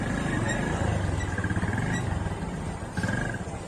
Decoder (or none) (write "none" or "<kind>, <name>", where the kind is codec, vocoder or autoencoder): none